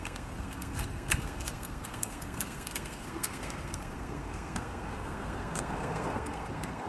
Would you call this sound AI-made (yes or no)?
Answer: yes